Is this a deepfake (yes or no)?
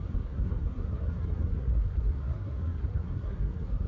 yes